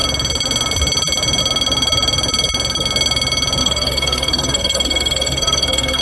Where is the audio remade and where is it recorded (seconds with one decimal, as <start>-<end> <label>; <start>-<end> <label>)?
0.0-3.6 recorded; 3.6-6.0 remade